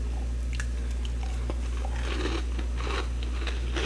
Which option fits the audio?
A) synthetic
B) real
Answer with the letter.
B